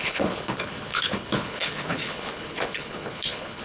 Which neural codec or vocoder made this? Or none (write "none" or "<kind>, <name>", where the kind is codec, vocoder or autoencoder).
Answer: codec, HILCodec